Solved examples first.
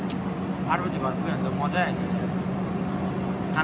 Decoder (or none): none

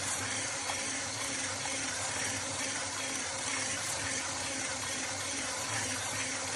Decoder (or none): vocoder, BigVGAN v2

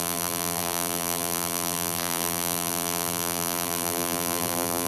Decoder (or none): vocoder, BigVGAN v2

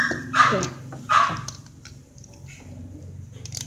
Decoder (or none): vocoder, BigVGAN v2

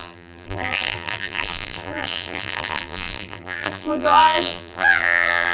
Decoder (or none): vocoder, BigVGAN v2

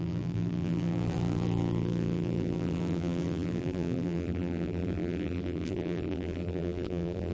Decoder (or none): vocoder, BigVGAN v2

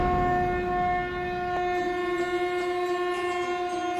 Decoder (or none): none